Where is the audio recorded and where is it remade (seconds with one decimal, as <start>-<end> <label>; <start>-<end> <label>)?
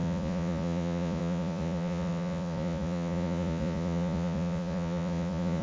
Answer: 0.0-5.6 remade